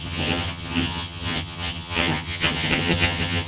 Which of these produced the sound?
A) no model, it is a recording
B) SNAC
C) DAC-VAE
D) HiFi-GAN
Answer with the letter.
D